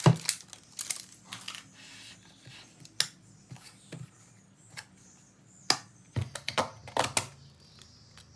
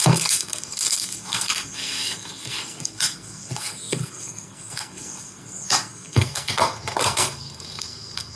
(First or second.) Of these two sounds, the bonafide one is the first